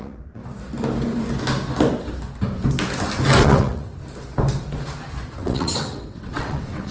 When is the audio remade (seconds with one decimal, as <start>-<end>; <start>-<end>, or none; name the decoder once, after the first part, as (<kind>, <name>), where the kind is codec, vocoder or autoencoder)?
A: 0.0-0.4 (vocoder, WaveNeXt); 3.4-3.9; 5.4-6.9